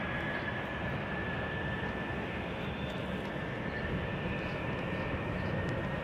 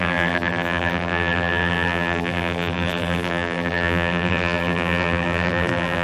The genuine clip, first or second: first